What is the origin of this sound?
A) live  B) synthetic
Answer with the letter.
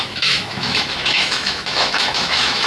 B